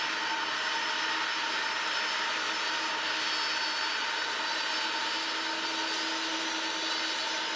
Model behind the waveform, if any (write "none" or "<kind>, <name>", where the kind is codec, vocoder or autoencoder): none